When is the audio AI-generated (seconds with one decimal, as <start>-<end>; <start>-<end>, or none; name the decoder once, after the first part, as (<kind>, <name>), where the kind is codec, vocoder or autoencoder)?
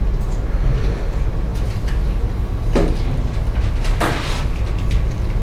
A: none